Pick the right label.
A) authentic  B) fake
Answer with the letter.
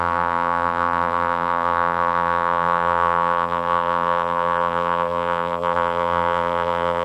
B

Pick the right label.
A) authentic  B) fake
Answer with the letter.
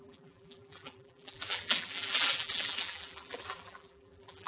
B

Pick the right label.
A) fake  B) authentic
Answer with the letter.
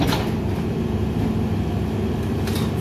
B